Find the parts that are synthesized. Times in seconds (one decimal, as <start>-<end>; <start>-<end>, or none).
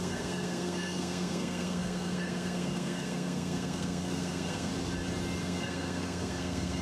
0.0-4.7; 5.4-6.8